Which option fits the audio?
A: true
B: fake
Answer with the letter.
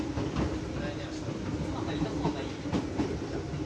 A